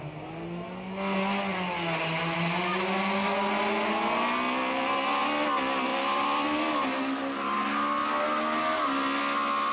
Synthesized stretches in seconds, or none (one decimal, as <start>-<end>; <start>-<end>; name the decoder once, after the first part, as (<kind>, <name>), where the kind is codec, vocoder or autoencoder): 5.9-7.0 (vocoder, BigVGAN v2)